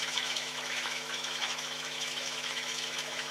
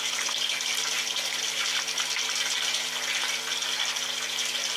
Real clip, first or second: second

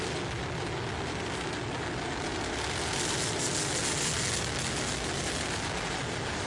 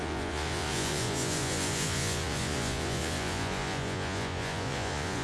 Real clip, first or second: first